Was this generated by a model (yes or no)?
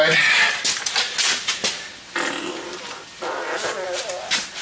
no